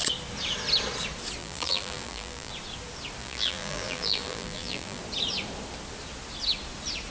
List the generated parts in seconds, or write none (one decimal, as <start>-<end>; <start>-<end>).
1.4-2.5; 3.2-5.0